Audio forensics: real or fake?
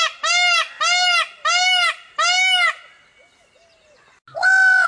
real